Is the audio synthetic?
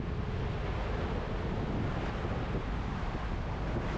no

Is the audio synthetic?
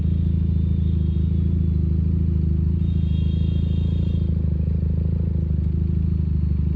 no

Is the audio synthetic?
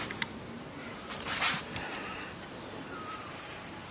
yes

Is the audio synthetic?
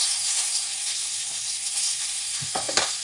yes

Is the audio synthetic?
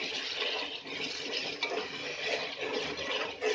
no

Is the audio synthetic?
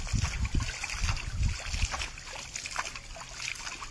no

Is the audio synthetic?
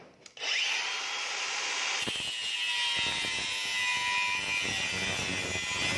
no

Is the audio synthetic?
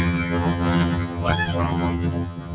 yes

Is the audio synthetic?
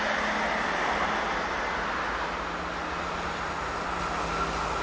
no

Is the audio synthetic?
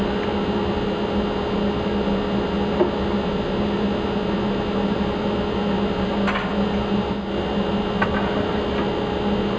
no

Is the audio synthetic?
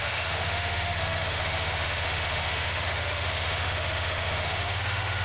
yes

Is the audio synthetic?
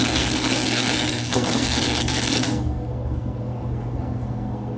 yes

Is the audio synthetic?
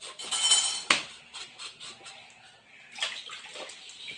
no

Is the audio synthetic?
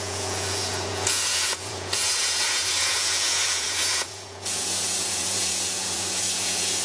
yes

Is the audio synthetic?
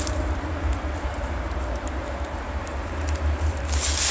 yes